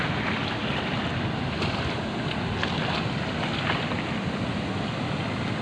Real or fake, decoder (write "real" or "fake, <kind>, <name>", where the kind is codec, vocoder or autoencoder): real